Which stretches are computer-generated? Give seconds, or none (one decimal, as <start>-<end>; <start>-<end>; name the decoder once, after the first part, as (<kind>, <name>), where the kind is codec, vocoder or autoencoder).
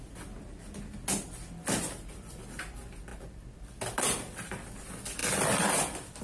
none